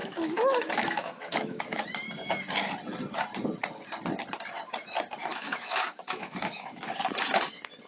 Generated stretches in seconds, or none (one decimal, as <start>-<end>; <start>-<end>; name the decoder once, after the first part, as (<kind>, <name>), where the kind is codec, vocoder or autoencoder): 0.0-1.8 (autoencoder, DAC-VAE); 5.3-6.8